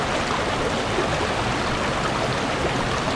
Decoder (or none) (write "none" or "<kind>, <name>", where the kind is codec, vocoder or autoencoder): none